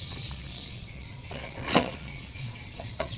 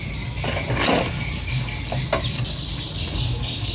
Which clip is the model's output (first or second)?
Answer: first